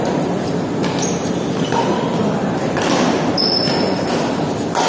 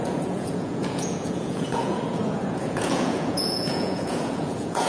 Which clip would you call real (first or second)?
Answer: first